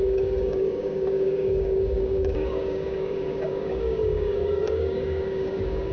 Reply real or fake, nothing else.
fake